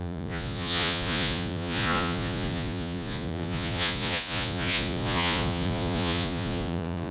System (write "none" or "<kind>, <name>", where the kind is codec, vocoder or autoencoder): vocoder, Vocos